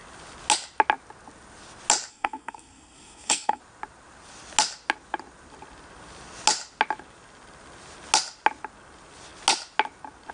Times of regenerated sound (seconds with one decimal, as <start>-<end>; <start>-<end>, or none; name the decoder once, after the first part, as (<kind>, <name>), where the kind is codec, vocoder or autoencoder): 2.1-3.6 (codec, SNAC)